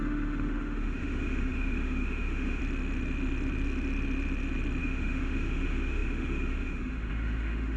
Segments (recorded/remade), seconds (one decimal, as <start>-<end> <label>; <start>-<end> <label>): 0.0-2.6 remade; 2.6-4.8 recorded; 4.8-7.8 remade